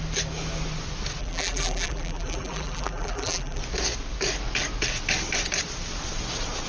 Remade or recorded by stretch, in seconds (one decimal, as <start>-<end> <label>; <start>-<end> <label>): 0.0-1.2 recorded; 1.2-3.6 remade; 3.6-6.7 recorded